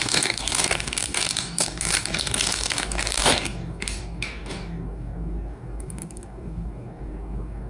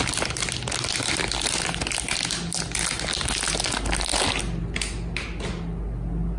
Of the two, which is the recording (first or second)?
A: second